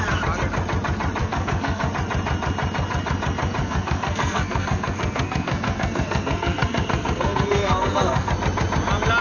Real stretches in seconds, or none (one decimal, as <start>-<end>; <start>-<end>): 0.0-1.2; 1.9-3.6; 8.3-9.2